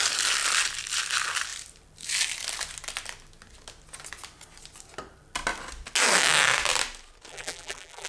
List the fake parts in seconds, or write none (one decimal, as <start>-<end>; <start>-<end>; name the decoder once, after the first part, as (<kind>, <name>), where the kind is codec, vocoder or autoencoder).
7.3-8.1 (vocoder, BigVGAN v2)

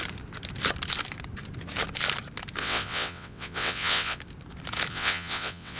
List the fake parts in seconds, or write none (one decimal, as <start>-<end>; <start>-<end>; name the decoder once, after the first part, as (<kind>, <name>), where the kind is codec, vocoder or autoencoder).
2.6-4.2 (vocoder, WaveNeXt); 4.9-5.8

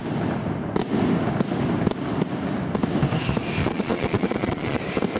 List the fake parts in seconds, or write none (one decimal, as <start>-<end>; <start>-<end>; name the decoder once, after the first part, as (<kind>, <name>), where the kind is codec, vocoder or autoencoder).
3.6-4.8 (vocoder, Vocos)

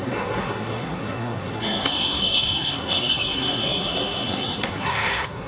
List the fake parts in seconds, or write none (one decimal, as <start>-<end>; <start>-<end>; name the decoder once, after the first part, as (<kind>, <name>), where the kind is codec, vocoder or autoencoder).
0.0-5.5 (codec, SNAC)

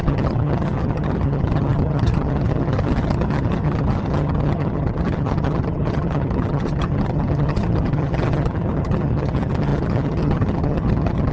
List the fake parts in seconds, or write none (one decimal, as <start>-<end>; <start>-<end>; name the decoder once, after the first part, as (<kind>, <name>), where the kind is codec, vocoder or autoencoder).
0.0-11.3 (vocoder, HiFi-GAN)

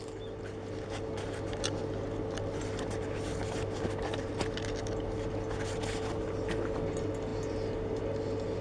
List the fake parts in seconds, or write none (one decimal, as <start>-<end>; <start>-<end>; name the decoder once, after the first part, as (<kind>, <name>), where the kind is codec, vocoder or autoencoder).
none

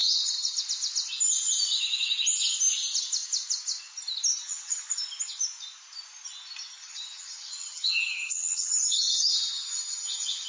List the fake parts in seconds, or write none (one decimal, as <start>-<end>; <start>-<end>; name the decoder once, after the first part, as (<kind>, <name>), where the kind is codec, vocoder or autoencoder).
0.0-0.6 (vocoder, HiFi-GAN); 4.4-5.0; 6.7-10.5